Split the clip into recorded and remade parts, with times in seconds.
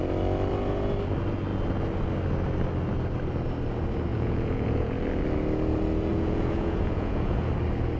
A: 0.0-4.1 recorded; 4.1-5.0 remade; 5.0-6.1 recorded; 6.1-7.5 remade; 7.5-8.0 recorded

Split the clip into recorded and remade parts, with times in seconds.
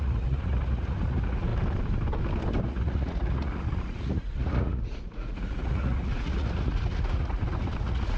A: 0.0-1.5 remade; 1.5-2.6 recorded; 2.6-8.2 remade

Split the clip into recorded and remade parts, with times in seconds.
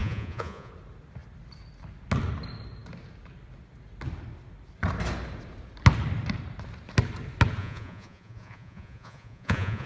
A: 0.0-0.7 remade; 0.7-7.6 recorded; 7.6-9.9 remade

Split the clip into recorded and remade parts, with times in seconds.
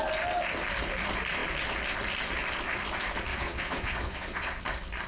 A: 0.0-3.3 recorded; 3.3-4.6 remade; 4.6-5.1 recorded